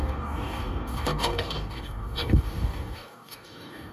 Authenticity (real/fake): fake